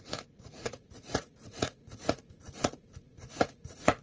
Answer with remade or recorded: remade